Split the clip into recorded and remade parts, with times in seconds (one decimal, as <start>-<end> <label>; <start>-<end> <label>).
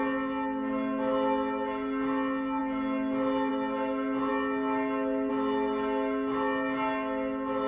0.0-7.7 recorded